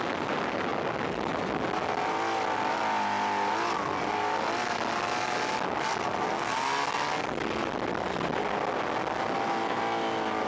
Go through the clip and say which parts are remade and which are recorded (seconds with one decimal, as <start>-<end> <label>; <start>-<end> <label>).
0.0-10.5 recorded